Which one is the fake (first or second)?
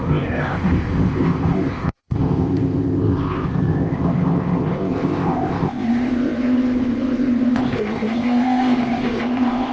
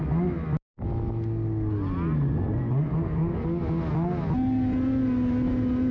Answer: first